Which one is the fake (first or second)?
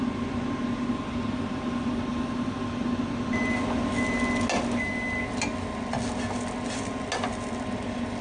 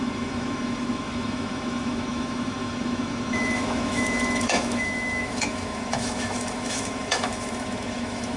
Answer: second